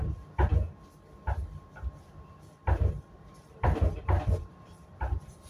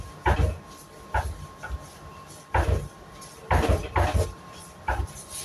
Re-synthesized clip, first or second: first